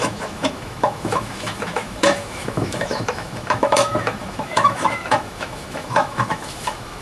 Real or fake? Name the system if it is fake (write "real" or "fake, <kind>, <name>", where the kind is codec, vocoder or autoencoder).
fake, autoencoder, DAC-VAE